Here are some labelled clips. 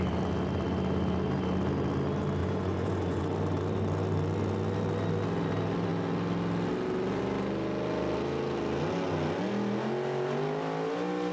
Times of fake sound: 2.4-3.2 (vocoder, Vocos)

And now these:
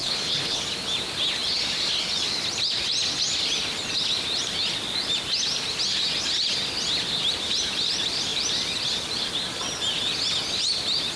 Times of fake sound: 0.0-0.6 (codec, HILCodec)

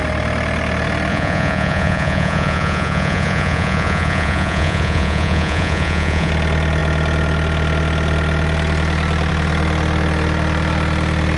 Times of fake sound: 1.1-6.3 (vocoder, Vocos)

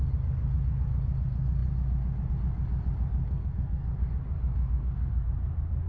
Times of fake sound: 3.2-4.1 (codec, SNAC); 4.5-5.3

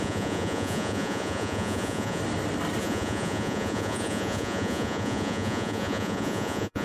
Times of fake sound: 0.0-2.2 (vocoder, Vocos); 2.8-6.8